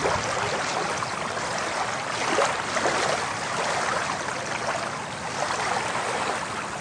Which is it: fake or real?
real